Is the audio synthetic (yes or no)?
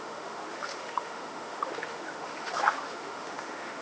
yes